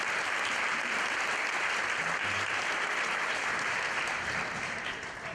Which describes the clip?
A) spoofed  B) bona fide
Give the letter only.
A